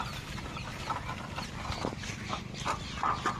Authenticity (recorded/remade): recorded